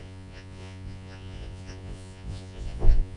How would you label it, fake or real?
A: fake